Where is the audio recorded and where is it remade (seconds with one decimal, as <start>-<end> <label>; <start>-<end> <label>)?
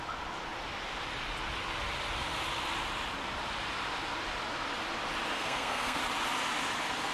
0.0-5.3 recorded; 5.3-6.0 remade; 6.0-7.1 recorded